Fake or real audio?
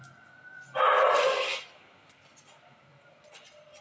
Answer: real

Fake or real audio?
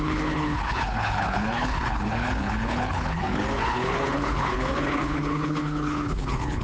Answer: fake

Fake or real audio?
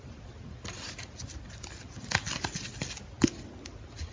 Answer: real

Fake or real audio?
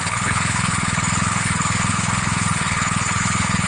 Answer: fake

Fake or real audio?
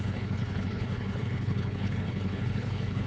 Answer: fake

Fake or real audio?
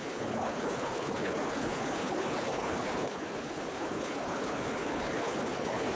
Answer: fake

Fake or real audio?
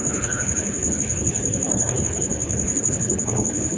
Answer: fake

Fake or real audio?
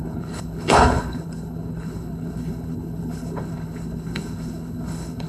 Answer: fake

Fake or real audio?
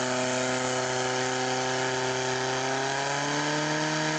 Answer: real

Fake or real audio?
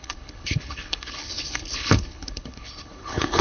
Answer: fake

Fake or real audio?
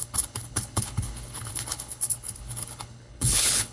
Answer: fake